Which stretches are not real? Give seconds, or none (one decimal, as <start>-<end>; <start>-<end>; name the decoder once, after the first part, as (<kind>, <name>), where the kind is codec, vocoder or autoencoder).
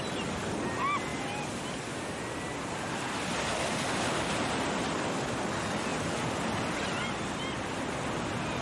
none